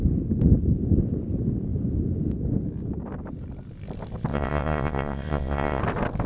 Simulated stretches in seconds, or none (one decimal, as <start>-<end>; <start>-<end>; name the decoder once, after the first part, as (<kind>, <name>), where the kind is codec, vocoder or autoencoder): 4.3-5.8 (vocoder, Vocos)